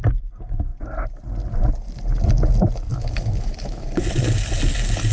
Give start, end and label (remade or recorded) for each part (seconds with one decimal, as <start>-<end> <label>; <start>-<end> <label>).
0.0-2.9 recorded; 2.9-4.1 remade; 4.1-5.1 recorded